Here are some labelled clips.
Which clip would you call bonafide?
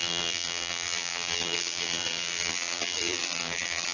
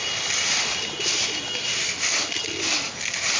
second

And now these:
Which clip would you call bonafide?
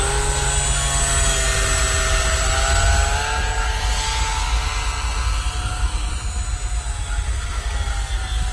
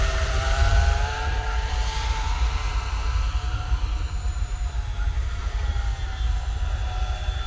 first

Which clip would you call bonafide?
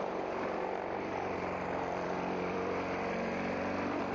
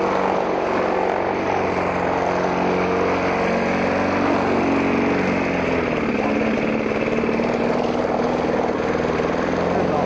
second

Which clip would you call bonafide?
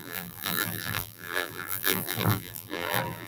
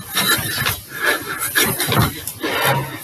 second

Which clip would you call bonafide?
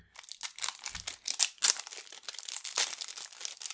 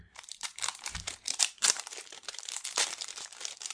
first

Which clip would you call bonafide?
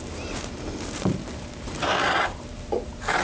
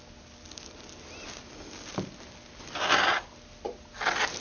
second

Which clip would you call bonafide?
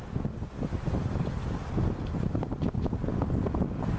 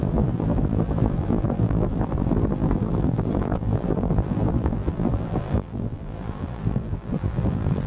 first